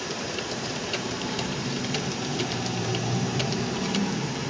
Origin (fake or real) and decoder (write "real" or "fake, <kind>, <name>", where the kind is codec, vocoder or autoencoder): fake, vocoder, BigVGAN v2